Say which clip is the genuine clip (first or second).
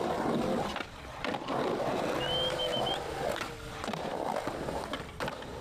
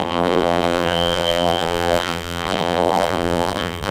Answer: first